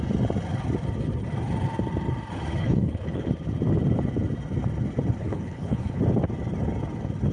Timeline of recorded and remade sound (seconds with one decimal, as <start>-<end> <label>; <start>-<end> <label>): 0.0-2.6 recorded; 2.6-3.3 remade; 3.3-5.2 recorded; 5.2-6.0 remade; 6.0-7.3 recorded